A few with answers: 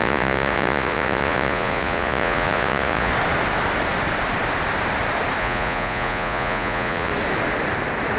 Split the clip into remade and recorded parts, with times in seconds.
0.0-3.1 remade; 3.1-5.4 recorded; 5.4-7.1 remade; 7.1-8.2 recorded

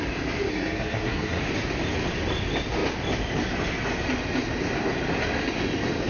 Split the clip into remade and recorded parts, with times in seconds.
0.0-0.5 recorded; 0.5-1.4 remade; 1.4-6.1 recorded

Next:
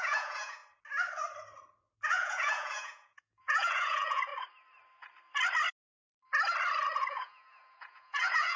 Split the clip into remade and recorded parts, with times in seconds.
0.0-0.6 remade; 0.6-2.1 recorded; 2.1-4.3 remade; 4.3-7.1 recorded; 7.1-8.6 remade

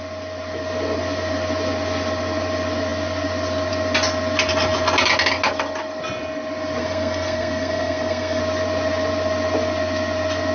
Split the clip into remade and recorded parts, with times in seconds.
0.0-6.8 recorded; 6.8-8.4 remade; 8.4-10.5 recorded

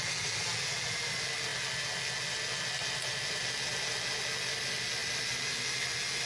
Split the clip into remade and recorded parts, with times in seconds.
0.0-6.3 recorded